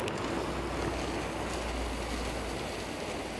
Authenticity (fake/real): real